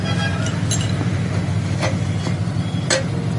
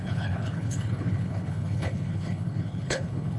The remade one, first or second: second